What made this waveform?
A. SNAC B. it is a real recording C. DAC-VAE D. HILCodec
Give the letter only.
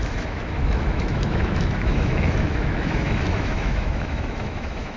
C